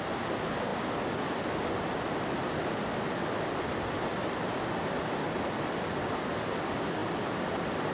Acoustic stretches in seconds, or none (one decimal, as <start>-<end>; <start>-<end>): 0.0-7.9